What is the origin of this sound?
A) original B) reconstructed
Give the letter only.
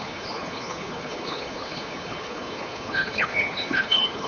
B